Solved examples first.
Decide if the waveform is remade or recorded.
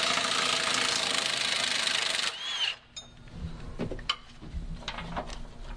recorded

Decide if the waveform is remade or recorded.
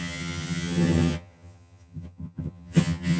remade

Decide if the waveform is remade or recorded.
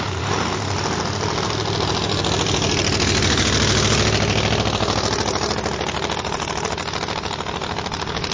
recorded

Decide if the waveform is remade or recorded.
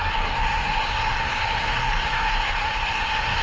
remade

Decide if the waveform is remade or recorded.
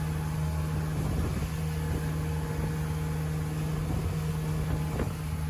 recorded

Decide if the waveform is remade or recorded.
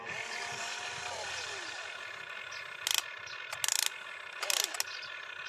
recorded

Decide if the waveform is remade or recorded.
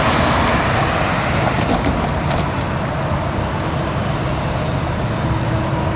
recorded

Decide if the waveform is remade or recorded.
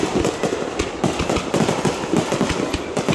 recorded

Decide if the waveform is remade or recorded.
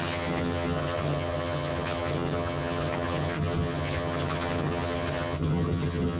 remade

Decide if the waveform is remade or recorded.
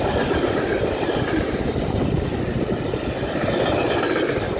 recorded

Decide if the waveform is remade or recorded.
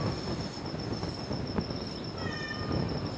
recorded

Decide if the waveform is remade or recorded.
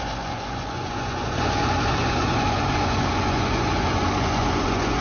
remade